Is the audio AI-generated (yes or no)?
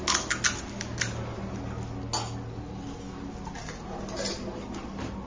no